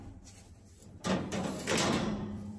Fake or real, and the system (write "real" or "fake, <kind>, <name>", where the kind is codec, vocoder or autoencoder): fake, vocoder, BigVGAN v2